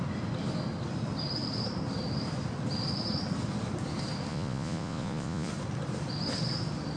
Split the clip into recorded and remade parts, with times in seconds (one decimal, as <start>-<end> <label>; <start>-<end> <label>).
0.0-4.3 recorded; 4.3-5.5 remade; 5.5-7.0 recorded